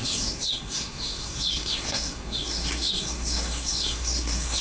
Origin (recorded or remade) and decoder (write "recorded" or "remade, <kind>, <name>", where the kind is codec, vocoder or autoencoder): remade, codec, SNAC